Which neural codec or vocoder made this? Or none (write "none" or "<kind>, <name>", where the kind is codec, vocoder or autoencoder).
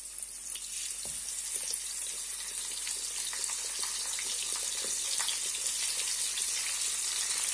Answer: none